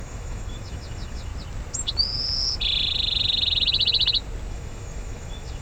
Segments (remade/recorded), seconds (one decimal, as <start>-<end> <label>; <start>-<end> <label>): 0.0-1.3 remade; 1.3-4.5 recorded; 4.5-5.6 remade